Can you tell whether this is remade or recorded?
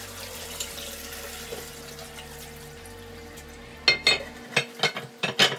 recorded